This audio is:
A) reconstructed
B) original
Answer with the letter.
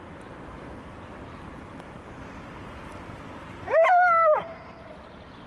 B